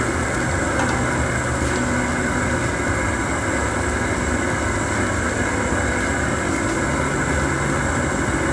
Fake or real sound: real